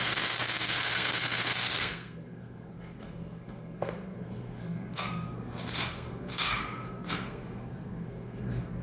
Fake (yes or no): yes